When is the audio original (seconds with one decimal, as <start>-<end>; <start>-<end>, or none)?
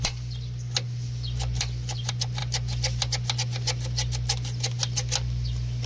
0.0-5.9